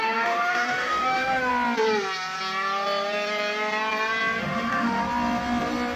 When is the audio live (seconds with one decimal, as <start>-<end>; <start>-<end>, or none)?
1.5-4.4; 5.0-6.0